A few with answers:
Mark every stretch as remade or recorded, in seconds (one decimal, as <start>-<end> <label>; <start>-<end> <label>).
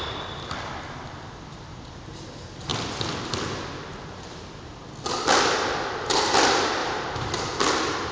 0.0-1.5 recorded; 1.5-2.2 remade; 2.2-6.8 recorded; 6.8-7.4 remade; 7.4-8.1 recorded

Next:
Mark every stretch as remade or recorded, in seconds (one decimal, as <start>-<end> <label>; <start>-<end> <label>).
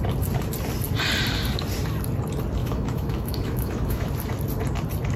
0.0-2.6 recorded; 2.6-4.1 remade; 4.1-5.2 recorded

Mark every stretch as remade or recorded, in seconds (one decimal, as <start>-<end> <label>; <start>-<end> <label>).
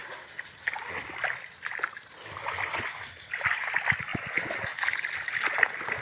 0.0-6.0 recorded